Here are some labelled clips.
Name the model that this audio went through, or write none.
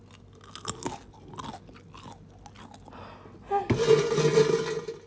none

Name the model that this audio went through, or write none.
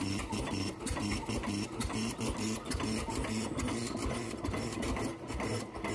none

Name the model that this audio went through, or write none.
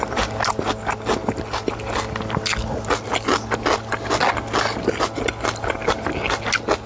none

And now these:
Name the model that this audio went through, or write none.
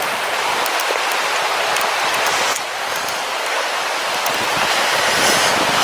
none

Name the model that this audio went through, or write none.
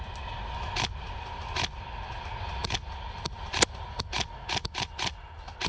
none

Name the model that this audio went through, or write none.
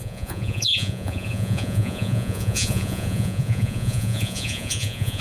vocoder, Vocos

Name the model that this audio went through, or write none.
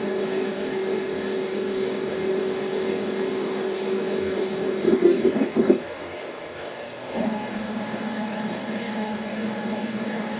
codec, DAC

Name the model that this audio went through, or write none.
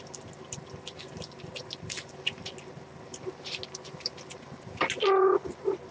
none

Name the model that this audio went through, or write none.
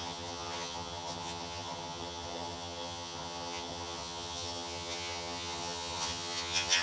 vocoder, HiFi-GAN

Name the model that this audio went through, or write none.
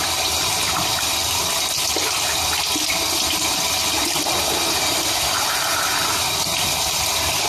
none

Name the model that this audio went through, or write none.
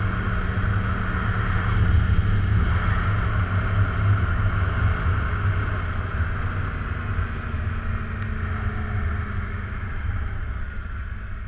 none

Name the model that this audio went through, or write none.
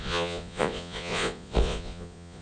vocoder, Vocos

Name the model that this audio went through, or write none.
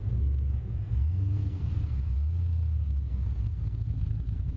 codec, SNAC